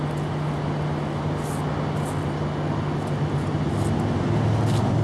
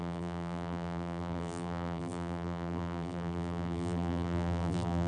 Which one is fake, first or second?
second